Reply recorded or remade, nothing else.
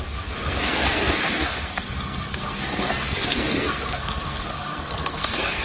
remade